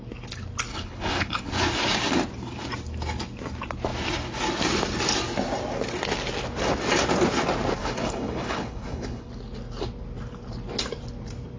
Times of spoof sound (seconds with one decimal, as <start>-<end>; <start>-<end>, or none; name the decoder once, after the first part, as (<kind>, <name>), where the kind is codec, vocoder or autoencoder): 0.7-1.5 (codec, HILCodec); 7.8-9.3